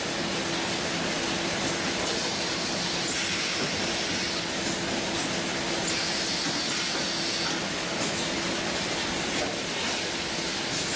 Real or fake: real